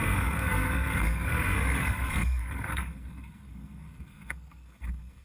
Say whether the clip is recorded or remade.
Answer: remade